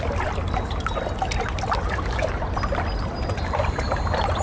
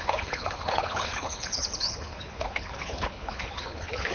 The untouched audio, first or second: first